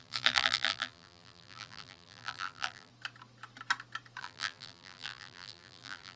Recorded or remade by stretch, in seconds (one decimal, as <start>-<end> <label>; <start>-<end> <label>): 0.0-2.9 remade; 2.9-4.2 recorded; 4.2-6.2 remade